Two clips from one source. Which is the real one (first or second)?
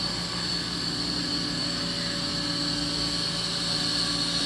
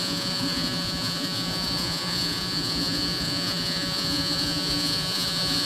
first